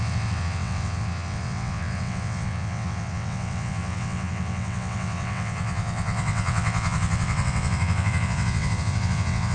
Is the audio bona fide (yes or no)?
no